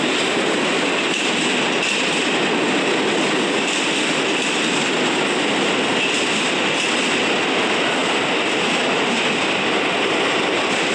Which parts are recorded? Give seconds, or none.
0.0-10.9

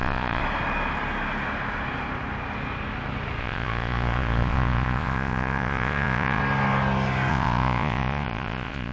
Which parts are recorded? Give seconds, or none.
0.4-3.4; 6.4-7.3

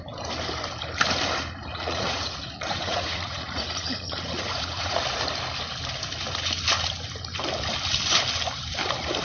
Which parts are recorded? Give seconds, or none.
0.0-1.7; 5.0-9.2

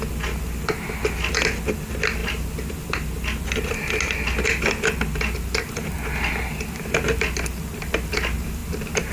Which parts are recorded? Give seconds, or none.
0.0-9.1

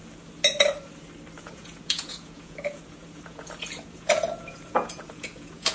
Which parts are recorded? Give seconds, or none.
0.0-1.4

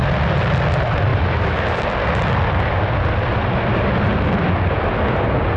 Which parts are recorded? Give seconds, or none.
0.0-5.6